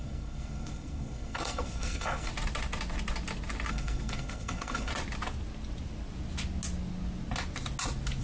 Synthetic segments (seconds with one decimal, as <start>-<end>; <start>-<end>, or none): 0.0-2.3; 3.7-4.9